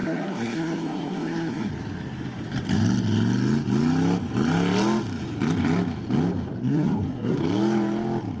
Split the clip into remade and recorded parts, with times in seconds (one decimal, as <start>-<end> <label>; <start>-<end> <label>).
0.0-1.7 remade; 1.7-6.6 recorded; 6.6-7.4 remade; 7.4-8.4 recorded